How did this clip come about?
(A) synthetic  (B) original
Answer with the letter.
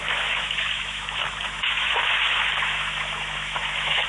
A